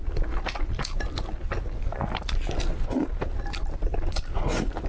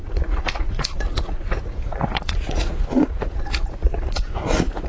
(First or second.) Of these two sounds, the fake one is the second